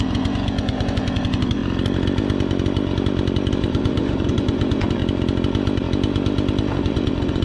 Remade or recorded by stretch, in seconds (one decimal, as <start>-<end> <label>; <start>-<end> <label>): 0.0-1.6 remade; 1.6-3.5 recorded; 3.5-5.0 remade; 5.0-6.8 recorded; 6.8-7.4 remade